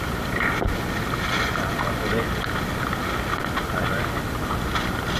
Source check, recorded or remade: recorded